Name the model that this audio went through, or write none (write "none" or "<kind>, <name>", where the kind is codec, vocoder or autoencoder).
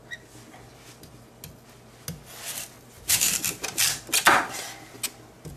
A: none